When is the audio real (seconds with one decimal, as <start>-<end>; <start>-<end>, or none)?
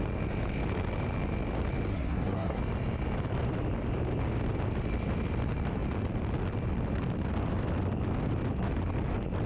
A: 0.0-1.9; 2.6-9.5